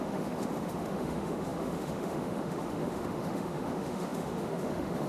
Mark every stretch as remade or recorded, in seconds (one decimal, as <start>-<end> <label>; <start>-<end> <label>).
0.0-5.1 remade